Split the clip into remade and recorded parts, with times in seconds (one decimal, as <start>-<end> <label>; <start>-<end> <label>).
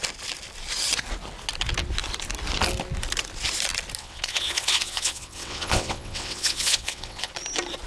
0.0-4.0 recorded; 4.0-7.3 remade; 7.3-7.9 recorded